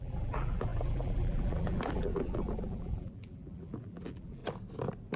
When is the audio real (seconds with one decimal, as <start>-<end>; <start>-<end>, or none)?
4.4-5.2